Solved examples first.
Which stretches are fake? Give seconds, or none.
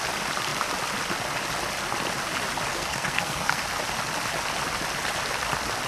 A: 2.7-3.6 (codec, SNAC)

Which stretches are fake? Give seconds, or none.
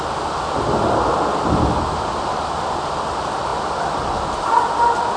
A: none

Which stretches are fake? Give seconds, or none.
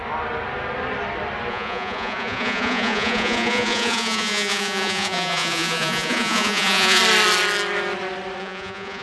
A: 1.5-7.0 (vocoder, Vocos); 8.4-9.0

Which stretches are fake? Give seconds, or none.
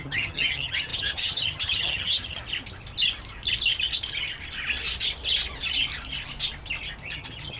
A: 0.0-2.4 (vocoder, HiFi-GAN); 7.0-7.6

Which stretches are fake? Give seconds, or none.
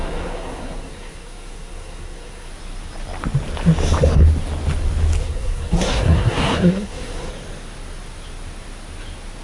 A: 0.0-2.5 (codec, SNAC); 5.2-7.3